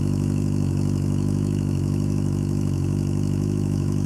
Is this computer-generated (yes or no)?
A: yes